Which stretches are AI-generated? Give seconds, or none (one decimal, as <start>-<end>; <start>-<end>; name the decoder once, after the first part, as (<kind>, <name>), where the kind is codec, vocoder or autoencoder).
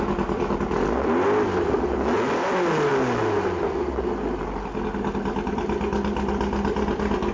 none